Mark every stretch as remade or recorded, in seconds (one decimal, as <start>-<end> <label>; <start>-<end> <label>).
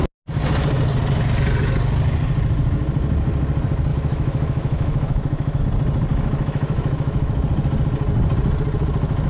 0.0-3.9 recorded; 3.9-5.6 remade; 5.6-6.1 recorded; 6.1-7.4 remade; 7.4-9.3 recorded